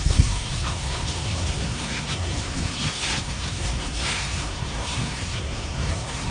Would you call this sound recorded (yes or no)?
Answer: no